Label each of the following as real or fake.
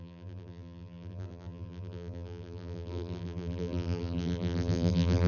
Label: fake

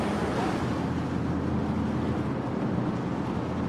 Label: real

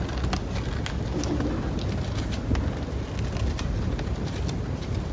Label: real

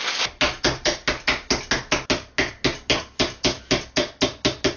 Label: real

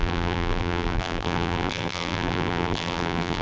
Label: fake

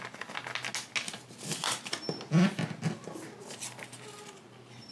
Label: real